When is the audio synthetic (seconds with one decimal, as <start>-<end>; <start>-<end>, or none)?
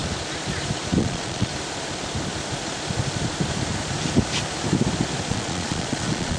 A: 1.0-1.5; 5.3-6.4